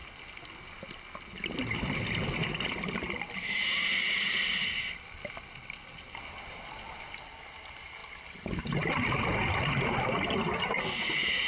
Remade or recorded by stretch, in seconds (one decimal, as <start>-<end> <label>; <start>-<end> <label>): 0.0-11.5 recorded